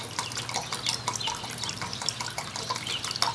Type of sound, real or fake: real